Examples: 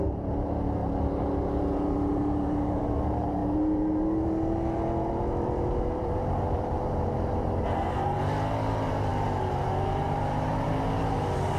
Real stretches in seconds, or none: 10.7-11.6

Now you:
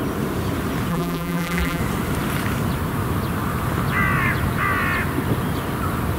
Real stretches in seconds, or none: 0.0-0.9; 1.8-6.2

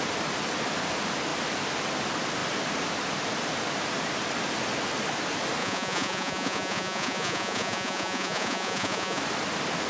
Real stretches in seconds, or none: 0.0-5.6; 9.2-9.9

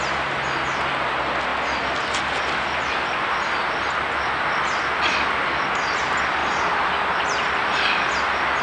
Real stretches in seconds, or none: 0.0-6.4; 7.2-8.6